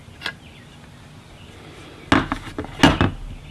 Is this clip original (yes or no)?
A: yes